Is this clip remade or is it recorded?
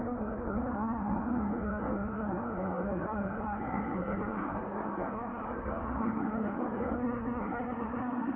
remade